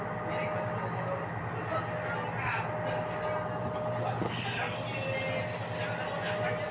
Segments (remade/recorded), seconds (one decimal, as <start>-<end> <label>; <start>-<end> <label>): 0.0-6.7 recorded

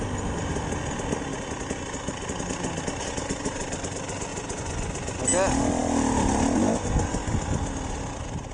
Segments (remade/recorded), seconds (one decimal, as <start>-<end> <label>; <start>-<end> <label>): 0.0-4.3 recorded; 4.3-5.2 remade; 5.2-8.5 recorded

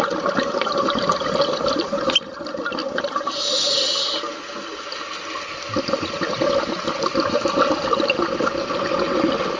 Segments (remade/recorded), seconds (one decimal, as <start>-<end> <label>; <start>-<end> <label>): 0.0-9.6 recorded

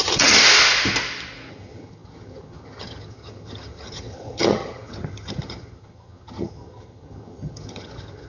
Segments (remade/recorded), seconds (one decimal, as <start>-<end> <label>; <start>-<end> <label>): 0.0-0.4 remade; 0.4-1.5 recorded; 1.5-8.3 remade

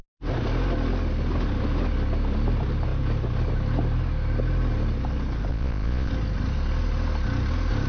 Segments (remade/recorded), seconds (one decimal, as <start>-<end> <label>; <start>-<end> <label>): 0.0-5.5 recorded; 5.5-6.1 remade; 6.1-7.9 recorded

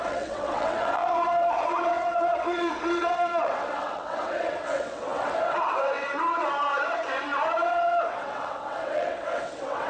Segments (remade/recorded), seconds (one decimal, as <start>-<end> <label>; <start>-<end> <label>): 0.0-9.9 remade

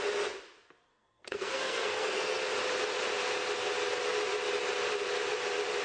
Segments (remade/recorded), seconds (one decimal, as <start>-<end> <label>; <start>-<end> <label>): 0.0-0.9 recorded; 0.9-2.4 remade; 2.4-5.8 recorded

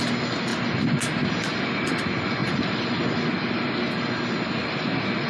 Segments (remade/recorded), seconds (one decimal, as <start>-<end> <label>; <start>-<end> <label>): 0.0-5.3 recorded